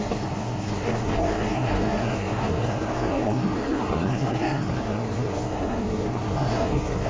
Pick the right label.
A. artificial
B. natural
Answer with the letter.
A